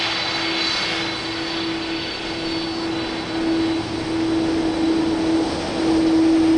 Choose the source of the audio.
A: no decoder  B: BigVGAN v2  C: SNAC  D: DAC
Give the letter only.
A